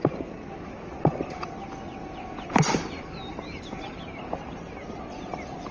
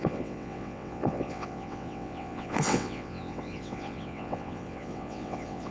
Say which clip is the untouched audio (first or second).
first